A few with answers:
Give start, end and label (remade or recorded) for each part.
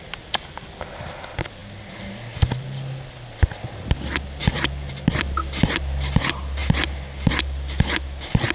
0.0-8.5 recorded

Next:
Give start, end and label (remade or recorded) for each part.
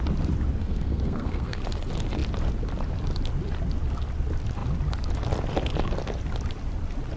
0.0-0.6 recorded; 0.6-1.6 remade; 1.6-7.2 recorded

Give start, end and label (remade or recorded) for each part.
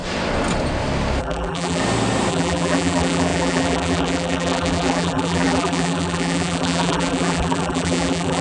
0.0-1.2 recorded; 1.2-1.8 remade; 1.8-2.3 recorded; 2.3-8.4 remade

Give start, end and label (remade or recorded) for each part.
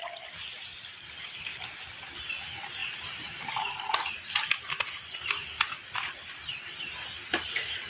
0.0-7.9 recorded